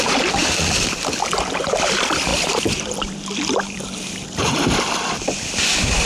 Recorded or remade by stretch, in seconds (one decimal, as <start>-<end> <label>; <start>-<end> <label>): 0.0-6.1 remade